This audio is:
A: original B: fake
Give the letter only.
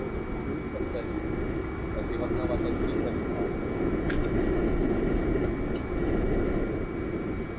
A